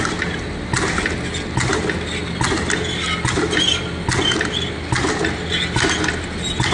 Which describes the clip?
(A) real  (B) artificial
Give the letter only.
A